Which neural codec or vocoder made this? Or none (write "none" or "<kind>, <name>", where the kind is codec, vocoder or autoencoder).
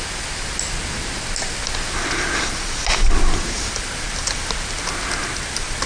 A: none